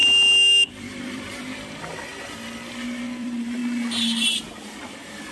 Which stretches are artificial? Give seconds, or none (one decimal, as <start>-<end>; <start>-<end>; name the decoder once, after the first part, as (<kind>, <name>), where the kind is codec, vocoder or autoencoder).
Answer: 0.7-2.1 (vocoder, BigVGAN v2); 3.2-3.6; 4.6-5.3